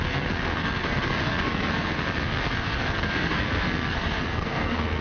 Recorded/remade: remade